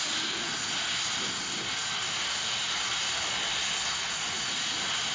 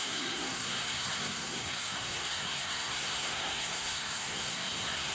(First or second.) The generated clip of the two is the second